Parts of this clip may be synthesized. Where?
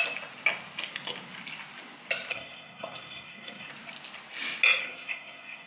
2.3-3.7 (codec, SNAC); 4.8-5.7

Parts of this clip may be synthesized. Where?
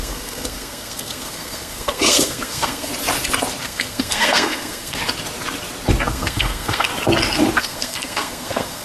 0.0-2.9 (codec, SNAC); 3.6-5.0; 6.1-6.9; 7.6-8.8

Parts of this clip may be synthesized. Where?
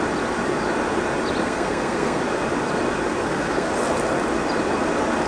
1.4-2.2 (codec, SNAC); 3.2-3.7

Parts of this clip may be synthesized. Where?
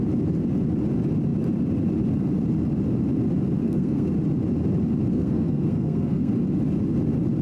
3.6-4.1 (codec, SNAC); 5.1-6.3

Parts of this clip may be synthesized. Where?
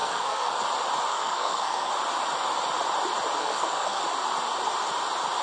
0.0-0.6 (codec, SNAC); 1.1-1.9; 3.4-4.0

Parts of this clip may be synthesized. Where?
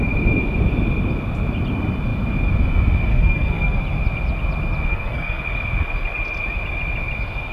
3.1-3.8 (codec, SNAC); 4.9-5.4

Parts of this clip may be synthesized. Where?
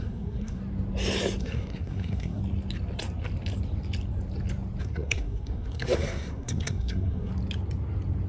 0.0-0.6 (codec, SNAC); 1.4-2.4; 4.8-7.3